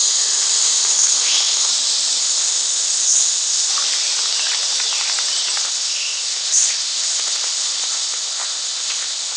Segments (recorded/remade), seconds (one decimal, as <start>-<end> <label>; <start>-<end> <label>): 0.0-1.7 remade; 1.7-2.2 recorded; 2.2-3.7 remade; 3.7-5.6 recorded; 5.6-9.4 remade